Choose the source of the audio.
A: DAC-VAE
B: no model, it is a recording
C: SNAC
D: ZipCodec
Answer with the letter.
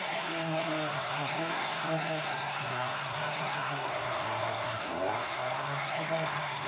C